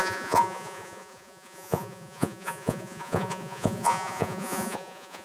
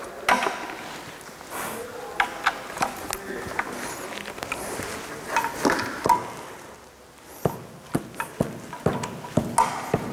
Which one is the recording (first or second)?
second